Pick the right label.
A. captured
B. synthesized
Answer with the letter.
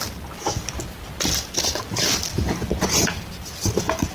B